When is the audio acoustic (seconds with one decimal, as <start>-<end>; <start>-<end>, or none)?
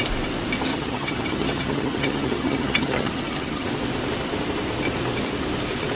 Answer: 0.0-0.7; 3.7-6.0